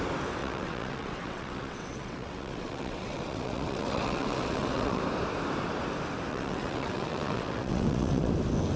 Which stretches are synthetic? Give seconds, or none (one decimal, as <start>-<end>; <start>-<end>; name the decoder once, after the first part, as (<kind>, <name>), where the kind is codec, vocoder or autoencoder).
0.4-5.0 (vocoder, WaveNeXt); 6.3-8.3